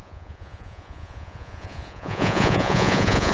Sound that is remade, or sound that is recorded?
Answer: remade